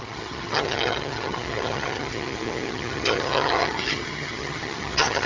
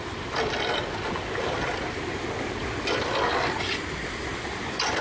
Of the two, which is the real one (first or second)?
second